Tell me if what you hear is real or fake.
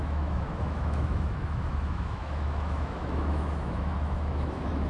fake